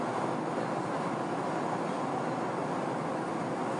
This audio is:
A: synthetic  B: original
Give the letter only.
B